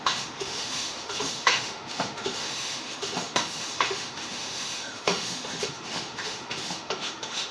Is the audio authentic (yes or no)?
no